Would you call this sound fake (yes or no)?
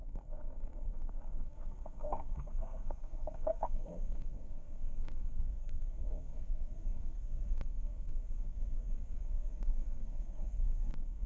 yes